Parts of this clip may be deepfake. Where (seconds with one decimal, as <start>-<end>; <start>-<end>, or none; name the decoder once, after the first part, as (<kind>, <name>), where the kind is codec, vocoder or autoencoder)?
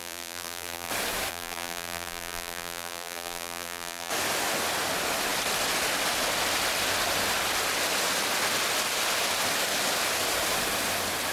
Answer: 0.0-0.9 (vocoder, BigVGAN v2); 1.3-4.1